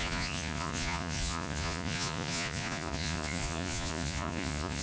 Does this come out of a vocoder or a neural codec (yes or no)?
yes